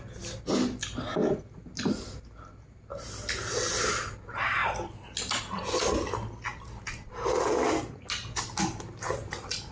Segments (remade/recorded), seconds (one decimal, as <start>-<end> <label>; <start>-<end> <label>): 0.0-9.7 recorded